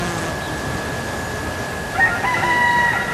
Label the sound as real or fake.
real